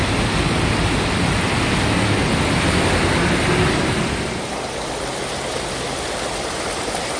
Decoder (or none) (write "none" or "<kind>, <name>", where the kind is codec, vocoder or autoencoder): none